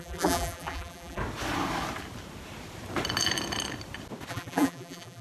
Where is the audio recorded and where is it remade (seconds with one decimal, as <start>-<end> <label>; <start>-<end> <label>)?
0.0-1.2 remade; 1.2-4.3 recorded; 4.3-5.2 remade